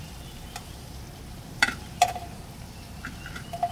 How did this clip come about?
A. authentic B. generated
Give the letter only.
B